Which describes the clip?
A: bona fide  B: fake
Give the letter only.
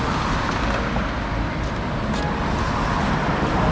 A